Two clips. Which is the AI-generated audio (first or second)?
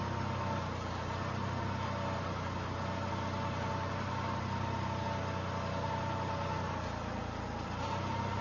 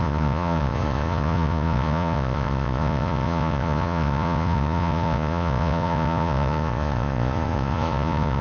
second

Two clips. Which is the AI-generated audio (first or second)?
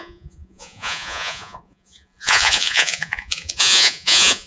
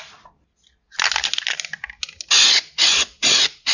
first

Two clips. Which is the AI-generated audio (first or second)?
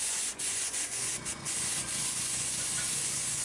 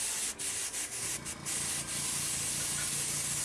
first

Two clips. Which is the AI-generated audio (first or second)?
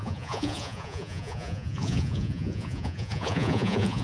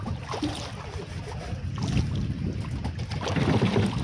first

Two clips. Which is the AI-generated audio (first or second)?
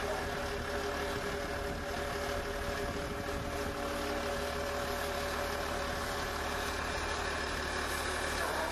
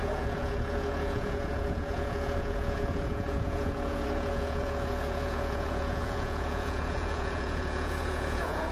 second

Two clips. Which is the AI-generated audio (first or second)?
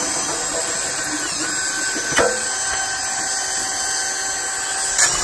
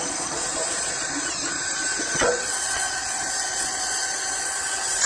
second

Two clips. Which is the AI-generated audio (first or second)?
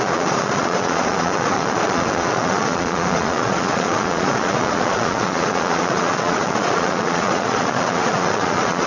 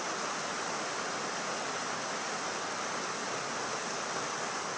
first